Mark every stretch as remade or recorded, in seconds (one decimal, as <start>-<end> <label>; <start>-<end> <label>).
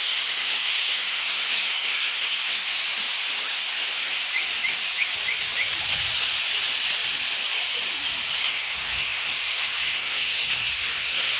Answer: 0.0-2.7 remade; 2.7-3.5 recorded; 3.5-4.2 remade; 4.2-8.4 recorded; 8.4-11.4 remade